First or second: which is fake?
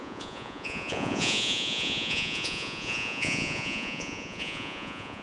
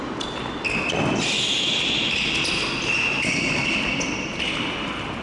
first